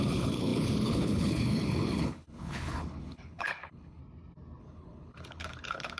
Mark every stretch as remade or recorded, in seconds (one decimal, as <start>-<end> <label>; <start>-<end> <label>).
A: 0.0-4.0 remade; 4.0-4.6 recorded; 4.6-6.0 remade